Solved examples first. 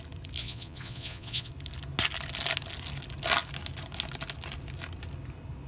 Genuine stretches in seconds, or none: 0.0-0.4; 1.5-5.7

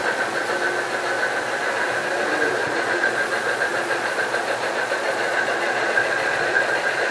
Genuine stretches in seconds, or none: 0.5-2.6

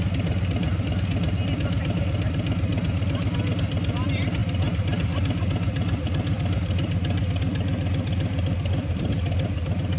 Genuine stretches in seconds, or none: 0.0-10.0